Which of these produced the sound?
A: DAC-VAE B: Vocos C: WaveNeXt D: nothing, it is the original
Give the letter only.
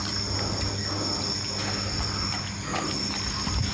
D